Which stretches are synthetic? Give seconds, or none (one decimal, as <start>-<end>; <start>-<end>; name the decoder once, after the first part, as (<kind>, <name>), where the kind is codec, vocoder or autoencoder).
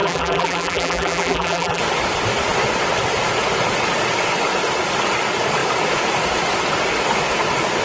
0.0-1.8 (vocoder, BigVGAN v2)